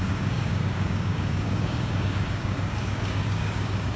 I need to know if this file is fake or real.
fake